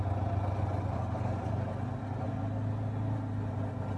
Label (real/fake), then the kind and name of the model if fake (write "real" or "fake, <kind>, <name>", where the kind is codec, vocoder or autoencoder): real